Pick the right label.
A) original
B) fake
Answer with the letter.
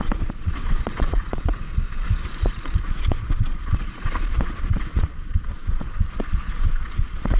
B